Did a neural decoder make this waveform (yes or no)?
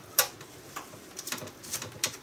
yes